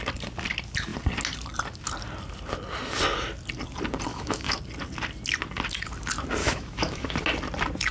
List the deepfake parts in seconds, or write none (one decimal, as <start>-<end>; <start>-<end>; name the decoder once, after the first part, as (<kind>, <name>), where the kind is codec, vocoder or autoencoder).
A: 4.1-4.6 (autoencoder, DAC-VAE); 6.4-7.1